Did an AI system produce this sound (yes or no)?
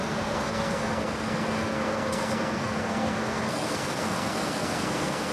yes